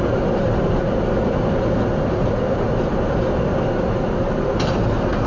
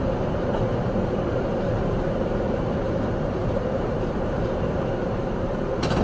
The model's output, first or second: second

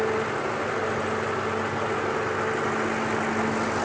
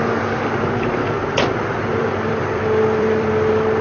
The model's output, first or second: second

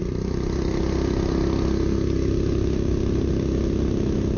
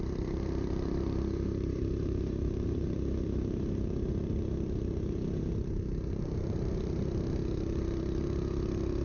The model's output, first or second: second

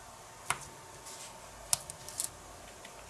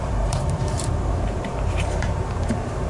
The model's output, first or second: second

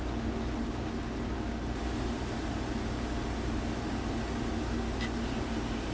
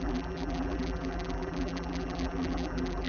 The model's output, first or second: second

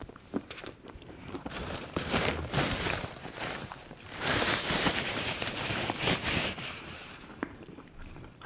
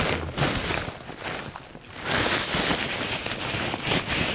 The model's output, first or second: first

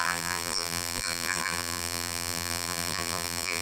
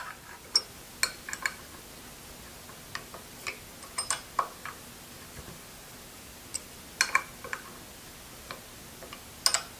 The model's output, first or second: first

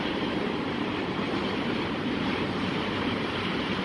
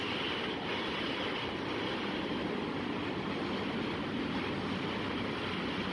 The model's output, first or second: first